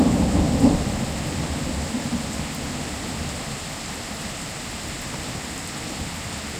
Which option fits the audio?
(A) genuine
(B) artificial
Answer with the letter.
A